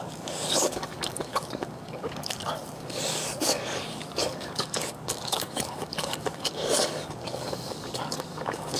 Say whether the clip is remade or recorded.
remade